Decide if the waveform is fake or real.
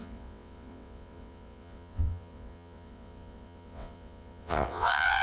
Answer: fake